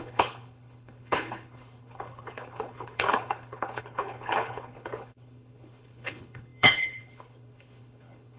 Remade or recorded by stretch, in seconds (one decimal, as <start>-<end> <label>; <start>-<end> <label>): 0.0-8.4 remade